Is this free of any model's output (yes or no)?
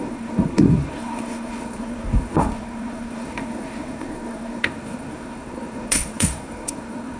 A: no